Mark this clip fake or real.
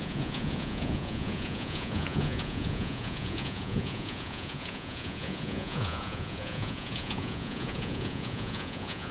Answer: fake